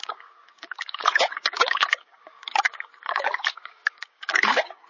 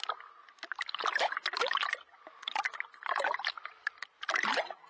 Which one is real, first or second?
second